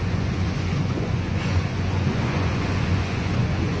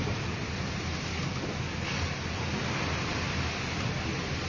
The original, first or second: second